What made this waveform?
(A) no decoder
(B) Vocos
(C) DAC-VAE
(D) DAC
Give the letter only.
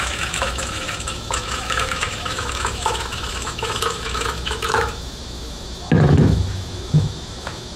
C